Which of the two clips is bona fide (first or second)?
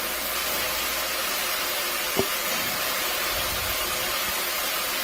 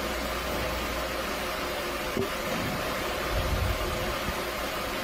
first